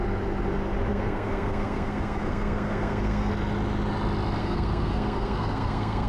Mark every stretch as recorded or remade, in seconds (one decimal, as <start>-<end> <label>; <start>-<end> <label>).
0.0-0.9 recorded; 0.9-3.3 remade; 3.3-4.4 recorded; 4.4-6.1 remade